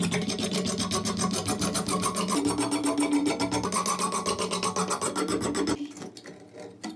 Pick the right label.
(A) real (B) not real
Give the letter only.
A